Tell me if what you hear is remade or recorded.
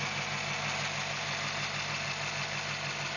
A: recorded